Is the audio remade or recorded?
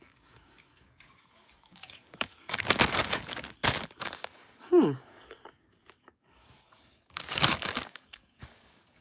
remade